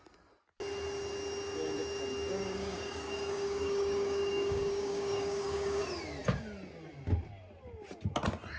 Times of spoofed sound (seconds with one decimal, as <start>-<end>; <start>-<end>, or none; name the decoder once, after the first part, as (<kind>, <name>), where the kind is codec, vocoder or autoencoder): 2.3-5.8 (codec, DAC)